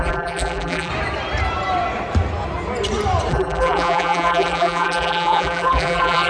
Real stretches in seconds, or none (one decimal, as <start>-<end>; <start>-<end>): 0.9-3.3